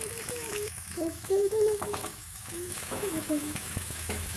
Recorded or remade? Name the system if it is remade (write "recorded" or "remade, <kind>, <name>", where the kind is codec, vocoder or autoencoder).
remade, autoencoder, DAC-VAE